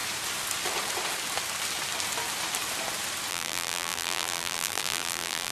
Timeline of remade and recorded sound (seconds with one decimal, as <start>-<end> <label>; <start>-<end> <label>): 0.0-3.3 recorded; 3.3-5.5 remade